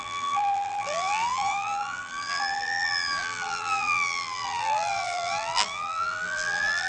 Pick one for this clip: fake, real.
fake